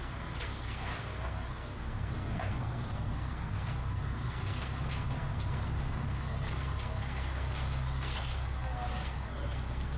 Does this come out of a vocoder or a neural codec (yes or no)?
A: yes